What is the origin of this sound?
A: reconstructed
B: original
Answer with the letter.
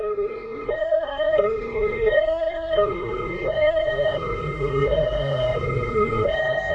A